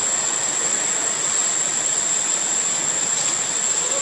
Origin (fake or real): real